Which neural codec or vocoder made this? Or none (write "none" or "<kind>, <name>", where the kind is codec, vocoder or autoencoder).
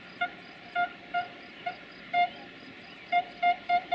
none